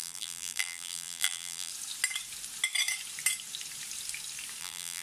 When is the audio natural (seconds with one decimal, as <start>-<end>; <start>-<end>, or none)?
1.7-4.6